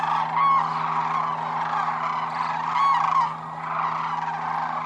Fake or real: real